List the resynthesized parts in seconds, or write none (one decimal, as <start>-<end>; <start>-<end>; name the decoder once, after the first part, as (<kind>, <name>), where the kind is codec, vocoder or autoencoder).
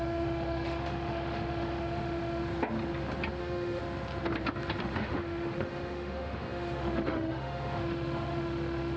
0.0-2.5 (autoencoder, DAC-VAE); 3.4-3.8; 4.8-9.0